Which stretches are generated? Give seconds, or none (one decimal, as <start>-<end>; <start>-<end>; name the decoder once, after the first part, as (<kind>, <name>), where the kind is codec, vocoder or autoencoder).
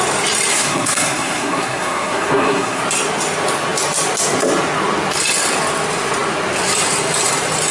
0.5-2.8 (codec, SNAC)